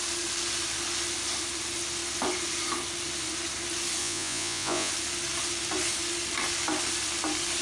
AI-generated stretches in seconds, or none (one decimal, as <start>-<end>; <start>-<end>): 4.0-4.9